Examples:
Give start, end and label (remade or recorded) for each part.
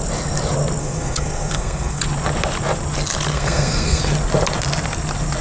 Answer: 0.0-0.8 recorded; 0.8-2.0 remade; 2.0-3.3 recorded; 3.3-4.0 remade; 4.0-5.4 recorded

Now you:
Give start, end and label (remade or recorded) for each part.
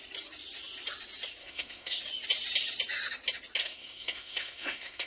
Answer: 0.0-1.4 recorded; 1.4-2.0 remade; 2.0-3.6 recorded; 3.6-5.1 remade